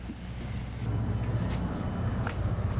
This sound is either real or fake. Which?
real